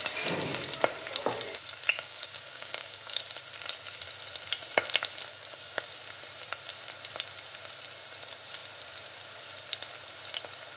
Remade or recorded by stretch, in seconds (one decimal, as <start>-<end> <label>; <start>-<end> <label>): 0.0-1.9 recorded; 1.9-3.2 remade; 3.2-5.3 recorded; 5.3-5.8 remade; 5.8-10.8 recorded